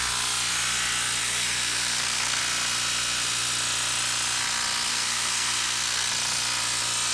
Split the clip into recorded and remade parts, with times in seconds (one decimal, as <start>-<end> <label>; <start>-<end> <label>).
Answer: 0.0-1.2 recorded; 1.2-2.4 remade; 2.4-4.9 recorded; 4.9-6.1 remade; 6.1-7.1 recorded